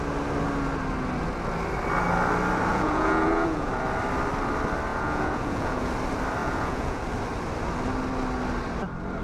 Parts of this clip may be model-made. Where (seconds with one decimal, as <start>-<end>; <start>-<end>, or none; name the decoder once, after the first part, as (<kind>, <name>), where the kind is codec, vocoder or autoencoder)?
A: 2.7-3.7 (vocoder, Vocos); 4.9-5.9; 6.4-7.0